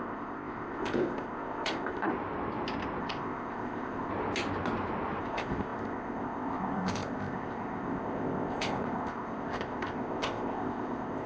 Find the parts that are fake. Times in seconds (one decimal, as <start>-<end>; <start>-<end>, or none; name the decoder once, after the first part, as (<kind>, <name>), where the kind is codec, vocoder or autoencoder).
0.0-2.1 (codec, ZipCodec); 3.0-4.1; 5.2-11.3